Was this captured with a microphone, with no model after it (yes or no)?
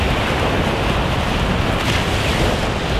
yes